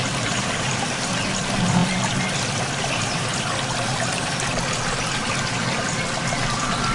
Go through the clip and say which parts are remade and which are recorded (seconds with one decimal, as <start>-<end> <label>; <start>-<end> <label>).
0.0-6.9 recorded